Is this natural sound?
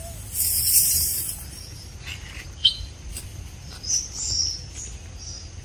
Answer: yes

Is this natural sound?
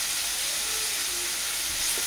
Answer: yes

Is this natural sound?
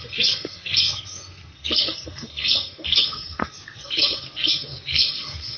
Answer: no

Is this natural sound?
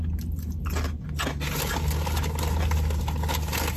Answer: yes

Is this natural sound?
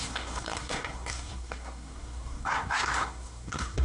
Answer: no